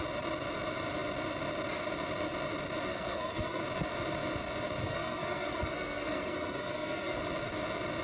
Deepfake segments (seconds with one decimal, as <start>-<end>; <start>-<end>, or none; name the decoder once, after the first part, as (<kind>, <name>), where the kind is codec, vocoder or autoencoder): 2.9-3.6 (codec, SNAC); 4.8-7.2

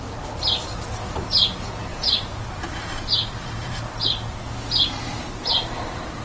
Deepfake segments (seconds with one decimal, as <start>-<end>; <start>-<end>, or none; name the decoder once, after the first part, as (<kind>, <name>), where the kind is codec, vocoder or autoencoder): 1.9-3.8 (vocoder, BigVGAN v2)

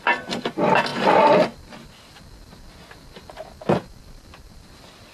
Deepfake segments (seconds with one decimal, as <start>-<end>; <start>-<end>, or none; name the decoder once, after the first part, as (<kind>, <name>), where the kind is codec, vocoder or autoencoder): none

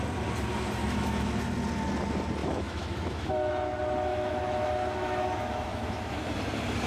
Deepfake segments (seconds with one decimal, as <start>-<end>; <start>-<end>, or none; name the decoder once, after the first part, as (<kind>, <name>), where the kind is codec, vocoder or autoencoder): 0.8-1.4 (autoencoder, DAC-VAE); 2.4-3.5; 4.1-6.4

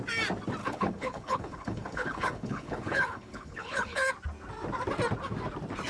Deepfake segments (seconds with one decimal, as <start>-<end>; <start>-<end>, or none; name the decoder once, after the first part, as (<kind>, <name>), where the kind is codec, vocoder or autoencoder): 0.6-4.1 (codec, HILCodec)

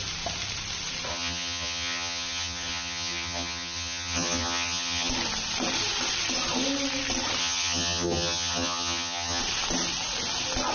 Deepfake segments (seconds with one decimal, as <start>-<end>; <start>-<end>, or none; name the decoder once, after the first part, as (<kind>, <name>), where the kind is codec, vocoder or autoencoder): 1.1-5.1 (vocoder, HiFi-GAN); 7.4-9.4

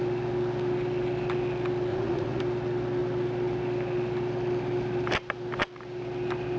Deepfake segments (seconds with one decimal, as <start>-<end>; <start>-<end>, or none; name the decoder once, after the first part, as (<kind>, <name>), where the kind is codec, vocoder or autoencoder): 1.9-2.4 (vocoder, Vocos)